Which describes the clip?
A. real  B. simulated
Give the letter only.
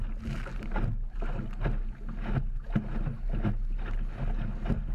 A